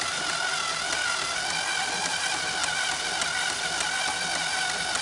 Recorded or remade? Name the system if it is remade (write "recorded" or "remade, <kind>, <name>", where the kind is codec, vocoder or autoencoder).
recorded